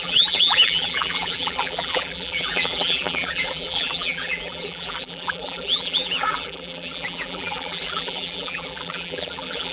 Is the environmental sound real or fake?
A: fake